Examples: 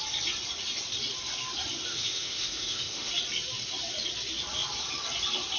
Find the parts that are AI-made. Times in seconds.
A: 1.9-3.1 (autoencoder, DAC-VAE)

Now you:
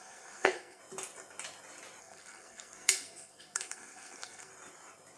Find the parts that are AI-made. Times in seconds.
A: 0.0-0.8 (codec, SNAC); 2.0-4.5

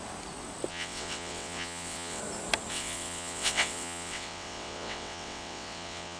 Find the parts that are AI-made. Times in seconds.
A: 0.7-2.2 (vocoder, WaveNeXt); 2.7-6.2